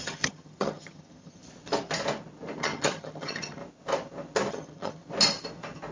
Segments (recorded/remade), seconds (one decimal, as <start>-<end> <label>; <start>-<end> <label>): 0.0-1.4 remade; 1.4-2.6 recorded; 2.6-3.6 remade; 3.6-4.5 recorded; 4.5-5.0 remade; 5.0-5.9 recorded